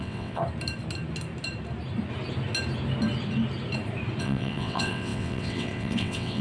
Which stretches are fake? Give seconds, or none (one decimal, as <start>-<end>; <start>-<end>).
0.0-0.4; 4.2-6.4